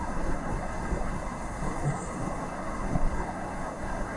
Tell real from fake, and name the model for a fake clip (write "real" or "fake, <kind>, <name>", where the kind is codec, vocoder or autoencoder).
fake, codec, SNAC